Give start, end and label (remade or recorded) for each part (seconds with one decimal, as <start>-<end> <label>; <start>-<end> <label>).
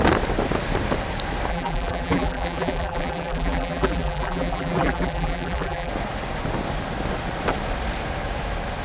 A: 0.0-1.5 recorded; 1.5-5.9 remade; 5.9-8.8 recorded